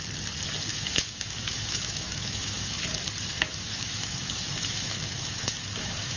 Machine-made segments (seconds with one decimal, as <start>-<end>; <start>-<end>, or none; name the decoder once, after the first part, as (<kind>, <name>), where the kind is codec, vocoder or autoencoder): 0.7-2.9 (autoencoder, DAC-VAE); 3.3-6.2